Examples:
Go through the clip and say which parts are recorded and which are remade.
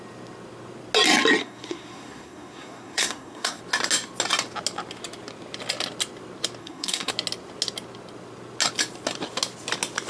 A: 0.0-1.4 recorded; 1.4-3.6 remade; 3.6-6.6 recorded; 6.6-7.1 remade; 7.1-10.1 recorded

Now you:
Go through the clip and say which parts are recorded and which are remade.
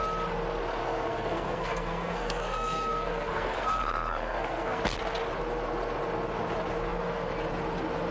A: 0.0-0.8 recorded; 0.8-4.8 remade; 4.8-8.1 recorded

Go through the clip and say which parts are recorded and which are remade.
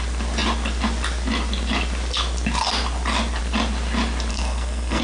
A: 0.0-4.3 recorded; 4.3-5.0 remade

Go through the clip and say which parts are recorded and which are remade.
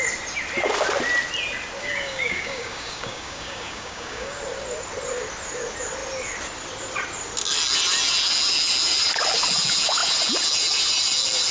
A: 0.0-1.8 recorded; 1.8-4.4 remade; 4.4-11.5 recorded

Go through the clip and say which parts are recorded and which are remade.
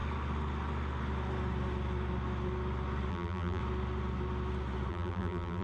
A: 0.0-3.1 recorded; 3.1-3.6 remade; 3.6-4.9 recorded; 4.9-5.6 remade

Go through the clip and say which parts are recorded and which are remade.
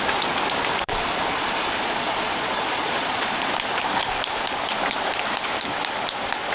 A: 0.0-0.7 recorded; 0.7-3.5 remade; 3.5-6.5 recorded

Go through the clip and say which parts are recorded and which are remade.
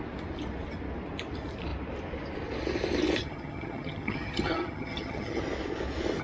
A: 0.0-3.2 recorded; 3.2-5.4 remade; 5.4-6.2 recorded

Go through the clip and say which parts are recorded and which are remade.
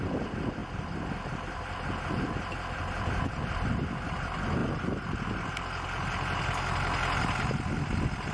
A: 0.0-8.3 recorded